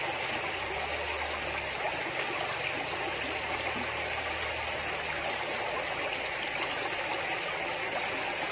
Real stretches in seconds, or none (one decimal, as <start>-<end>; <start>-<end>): 0.0-8.5